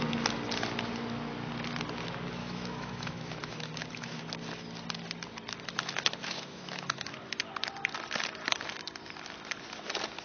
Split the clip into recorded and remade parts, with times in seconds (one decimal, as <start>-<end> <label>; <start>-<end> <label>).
0.0-2.4 recorded; 2.4-4.2 remade; 4.2-6.2 recorded; 6.2-7.4 remade; 7.4-10.2 recorded

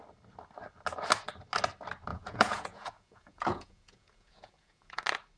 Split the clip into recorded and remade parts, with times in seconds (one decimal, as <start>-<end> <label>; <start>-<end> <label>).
0.0-2.1 recorded; 2.1-5.0 remade; 5.0-5.4 recorded

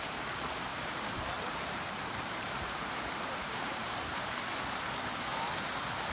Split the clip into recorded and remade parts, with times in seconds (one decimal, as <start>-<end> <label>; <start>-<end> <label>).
0.0-0.7 recorded; 0.7-4.4 remade; 4.4-6.1 recorded

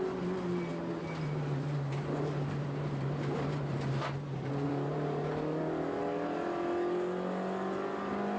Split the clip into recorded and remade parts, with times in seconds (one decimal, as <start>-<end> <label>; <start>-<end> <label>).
0.0-0.7 recorded; 0.7-5.6 remade; 5.6-8.4 recorded

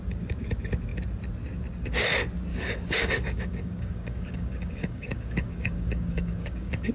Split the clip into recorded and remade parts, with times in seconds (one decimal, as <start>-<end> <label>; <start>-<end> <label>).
0.0-2.5 recorded; 2.5-6.9 remade

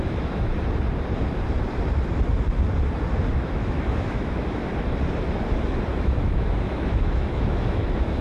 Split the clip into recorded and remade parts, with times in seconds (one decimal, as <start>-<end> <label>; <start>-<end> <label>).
0.0-0.5 remade; 0.5-3.3 recorded; 3.3-4.7 remade; 4.7-5.9 recorded; 5.9-8.2 remade

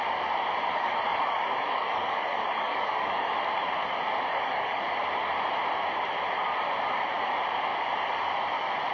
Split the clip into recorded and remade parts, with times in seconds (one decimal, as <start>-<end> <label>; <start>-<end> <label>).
0.0-0.7 recorded; 0.7-3.3 remade; 3.3-4.3 recorded; 4.3-4.8 remade; 4.8-8.9 recorded